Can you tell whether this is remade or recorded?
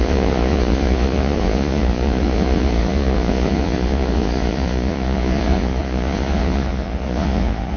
remade